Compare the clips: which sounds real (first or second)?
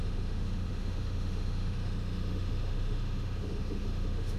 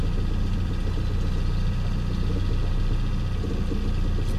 second